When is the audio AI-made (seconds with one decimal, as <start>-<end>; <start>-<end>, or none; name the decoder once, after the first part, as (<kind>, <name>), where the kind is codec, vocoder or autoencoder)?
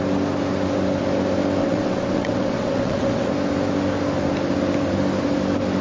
1.6-3.3 (vocoder, WaveNeXt)